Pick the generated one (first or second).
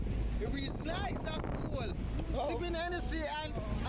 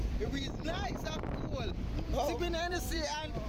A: second